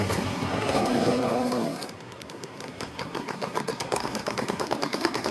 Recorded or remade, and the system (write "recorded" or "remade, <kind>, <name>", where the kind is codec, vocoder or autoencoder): remade, codec, SNAC